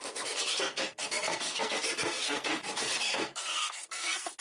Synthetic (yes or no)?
yes